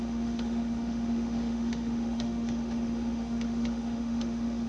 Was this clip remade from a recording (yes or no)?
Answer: yes